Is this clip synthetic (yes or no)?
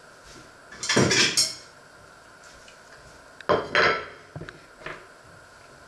no